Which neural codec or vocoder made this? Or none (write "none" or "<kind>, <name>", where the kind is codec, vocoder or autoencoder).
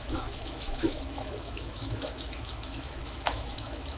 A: autoencoder, DAC-VAE